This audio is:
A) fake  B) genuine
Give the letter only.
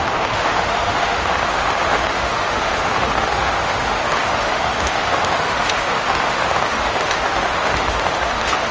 A